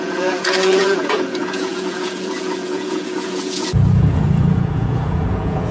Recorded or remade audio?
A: remade